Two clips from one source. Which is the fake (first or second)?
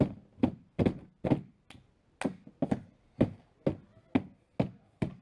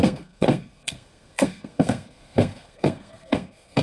second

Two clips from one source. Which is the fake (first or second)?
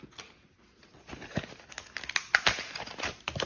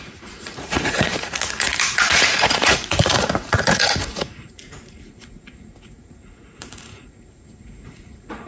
second